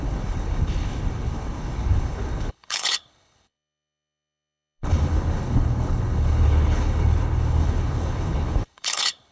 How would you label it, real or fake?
fake